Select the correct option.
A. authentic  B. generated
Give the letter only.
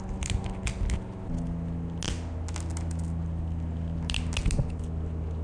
A